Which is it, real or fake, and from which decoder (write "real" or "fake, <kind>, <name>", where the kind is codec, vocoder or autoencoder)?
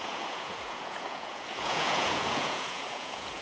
fake, vocoder, Vocos